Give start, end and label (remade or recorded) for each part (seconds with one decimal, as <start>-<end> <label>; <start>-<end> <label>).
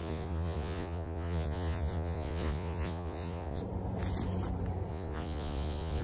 0.0-3.6 remade; 3.6-4.9 recorded; 4.9-6.0 remade